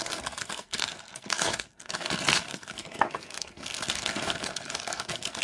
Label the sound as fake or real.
fake